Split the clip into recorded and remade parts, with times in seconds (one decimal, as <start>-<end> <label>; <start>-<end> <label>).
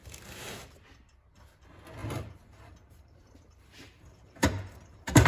0.0-2.0 recorded; 2.0-5.3 remade